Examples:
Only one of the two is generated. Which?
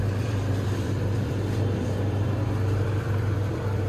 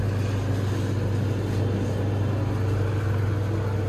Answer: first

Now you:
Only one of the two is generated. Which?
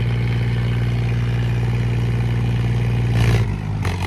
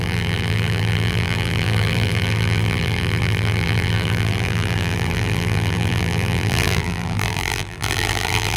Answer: second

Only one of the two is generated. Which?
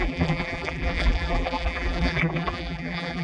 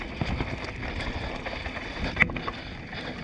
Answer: first